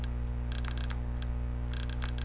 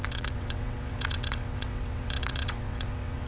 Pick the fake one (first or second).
second